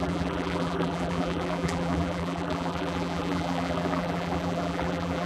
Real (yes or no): no